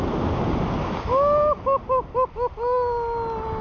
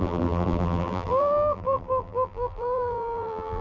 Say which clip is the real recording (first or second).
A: first